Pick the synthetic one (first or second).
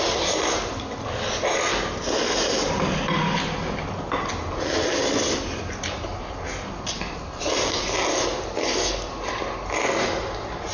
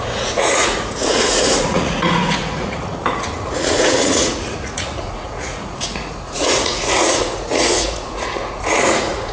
second